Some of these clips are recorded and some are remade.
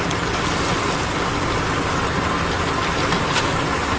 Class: recorded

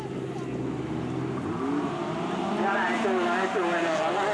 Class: recorded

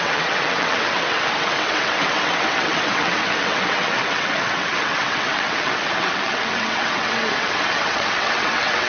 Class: remade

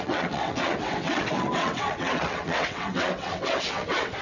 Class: remade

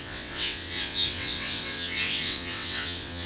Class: remade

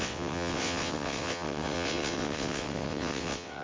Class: remade